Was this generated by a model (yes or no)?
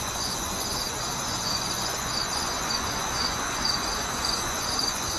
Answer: yes